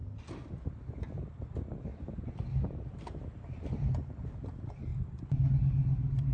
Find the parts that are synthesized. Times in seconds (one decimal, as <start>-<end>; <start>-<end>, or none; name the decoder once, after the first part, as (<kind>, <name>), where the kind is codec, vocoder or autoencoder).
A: 0.0-0.5 (vocoder, BigVGAN v2); 4.9-5.5